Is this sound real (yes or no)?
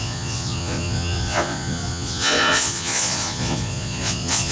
no